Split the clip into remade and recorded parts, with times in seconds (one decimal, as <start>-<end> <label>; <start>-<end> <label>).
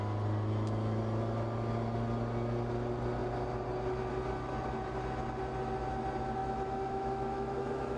0.0-6.4 recorded; 6.4-8.0 remade